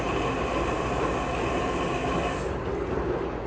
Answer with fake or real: real